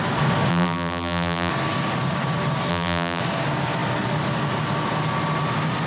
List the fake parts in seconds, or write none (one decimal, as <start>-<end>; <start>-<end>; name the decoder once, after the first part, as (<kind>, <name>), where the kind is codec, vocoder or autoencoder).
0.5-1.5 (vocoder, BigVGAN v2); 2.7-3.2